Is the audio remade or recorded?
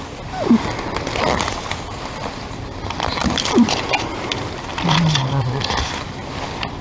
remade